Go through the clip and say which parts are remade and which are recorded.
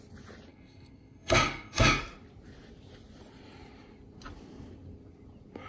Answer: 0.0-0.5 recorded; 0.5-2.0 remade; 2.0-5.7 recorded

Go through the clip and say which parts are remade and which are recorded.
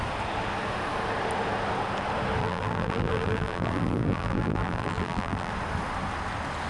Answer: 0.0-2.4 recorded; 2.4-5.5 remade; 5.5-6.7 recorded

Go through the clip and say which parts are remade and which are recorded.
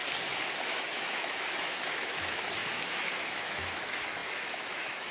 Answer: 0.0-0.6 recorded; 0.6-5.1 remade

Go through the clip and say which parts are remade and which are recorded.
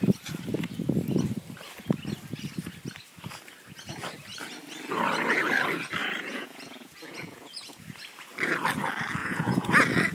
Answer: 0.0-6.0 recorded; 6.0-7.8 remade; 7.8-9.2 recorded; 9.2-9.7 remade; 9.7-10.1 recorded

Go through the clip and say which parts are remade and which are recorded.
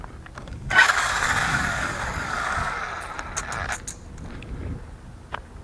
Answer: 0.0-0.4 recorded; 0.4-2.8 remade; 2.8-5.6 recorded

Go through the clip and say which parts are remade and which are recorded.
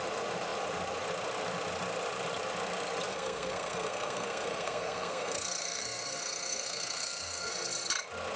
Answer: 0.0-3.1 recorded; 3.1-7.5 remade; 7.5-8.4 recorded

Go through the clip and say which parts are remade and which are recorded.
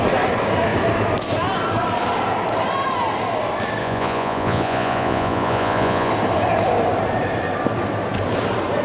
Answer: 0.0-3.8 recorded; 3.8-6.1 remade; 6.1-8.8 recorded